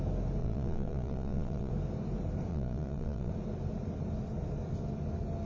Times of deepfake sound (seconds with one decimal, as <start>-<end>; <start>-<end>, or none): 0.4-1.7; 2.5-3.3